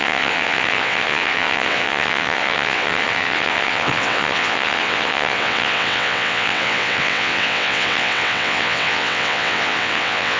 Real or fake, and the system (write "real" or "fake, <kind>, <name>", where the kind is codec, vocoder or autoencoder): fake, vocoder, WaveNeXt